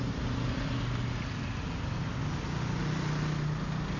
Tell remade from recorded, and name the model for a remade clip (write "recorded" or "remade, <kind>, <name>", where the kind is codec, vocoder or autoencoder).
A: recorded